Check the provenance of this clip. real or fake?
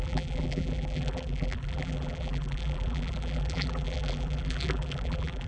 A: fake